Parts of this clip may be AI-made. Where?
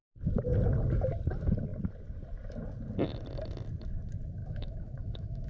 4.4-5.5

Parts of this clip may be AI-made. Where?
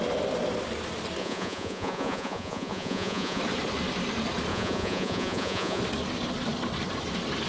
1.2-3.4; 4.5-5.8